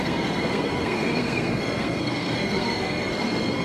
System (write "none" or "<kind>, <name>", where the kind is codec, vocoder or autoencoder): codec, SNAC